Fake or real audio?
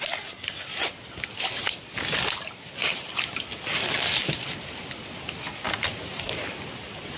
real